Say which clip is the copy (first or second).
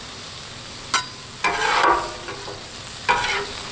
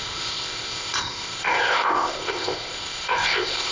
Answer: second